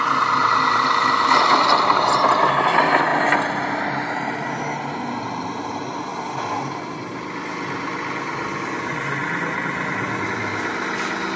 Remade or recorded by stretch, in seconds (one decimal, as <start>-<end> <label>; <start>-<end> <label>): 0.0-11.4 recorded

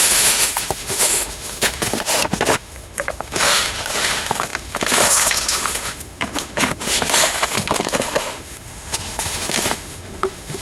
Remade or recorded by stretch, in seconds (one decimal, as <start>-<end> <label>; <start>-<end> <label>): 0.0-10.6 remade